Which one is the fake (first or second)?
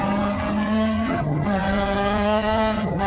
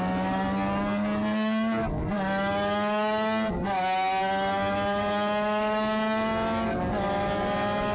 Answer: first